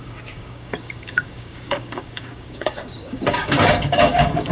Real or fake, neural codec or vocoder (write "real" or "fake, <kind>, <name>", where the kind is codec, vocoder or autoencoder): fake, codec, DAC